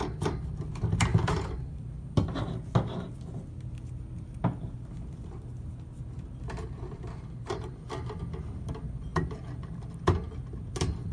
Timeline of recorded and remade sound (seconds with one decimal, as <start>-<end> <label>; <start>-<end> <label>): 0.0-1.1 recorded; 1.1-2.1 remade; 2.1-4.6 recorded; 4.6-7.7 remade; 7.7-11.1 recorded